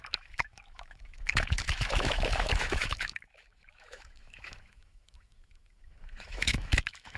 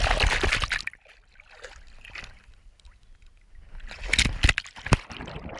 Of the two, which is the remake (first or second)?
first